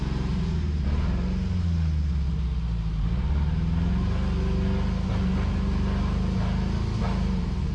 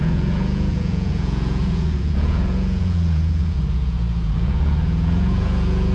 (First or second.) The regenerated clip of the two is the second